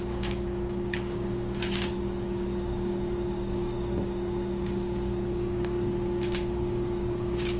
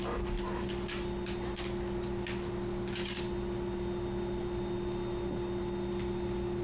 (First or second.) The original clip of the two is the second